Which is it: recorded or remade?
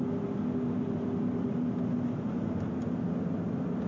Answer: recorded